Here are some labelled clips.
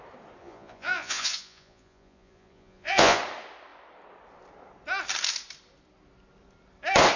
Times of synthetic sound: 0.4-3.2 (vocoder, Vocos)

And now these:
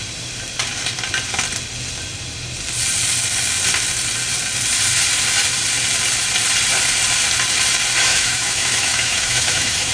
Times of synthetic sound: 8.1-9.9 (autoencoder, DAC-VAE)